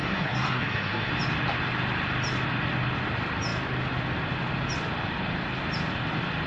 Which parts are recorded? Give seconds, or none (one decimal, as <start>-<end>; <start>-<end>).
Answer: 1.1-6.5